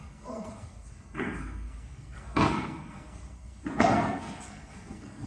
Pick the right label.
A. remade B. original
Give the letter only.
A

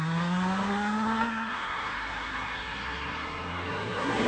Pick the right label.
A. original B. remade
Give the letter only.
B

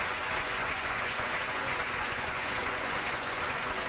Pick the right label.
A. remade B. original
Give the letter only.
A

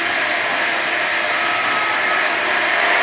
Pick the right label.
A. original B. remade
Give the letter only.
A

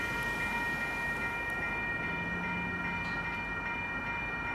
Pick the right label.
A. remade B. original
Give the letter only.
B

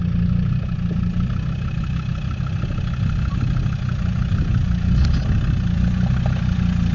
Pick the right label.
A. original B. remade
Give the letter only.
A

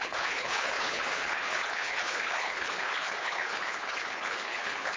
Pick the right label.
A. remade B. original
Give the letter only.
A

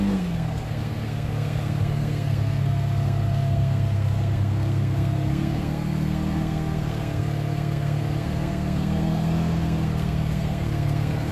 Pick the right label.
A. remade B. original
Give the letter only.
A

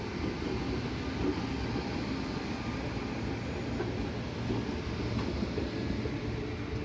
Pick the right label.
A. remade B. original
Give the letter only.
B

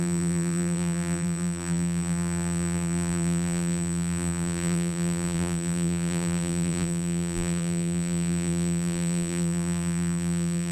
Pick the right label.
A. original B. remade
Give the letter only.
B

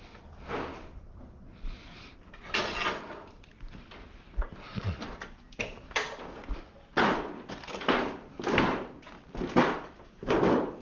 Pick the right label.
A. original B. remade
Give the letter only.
A